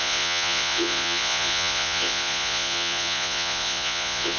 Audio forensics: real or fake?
fake